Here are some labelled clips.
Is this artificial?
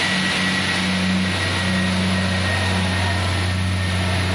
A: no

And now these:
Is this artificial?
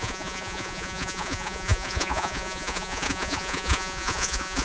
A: yes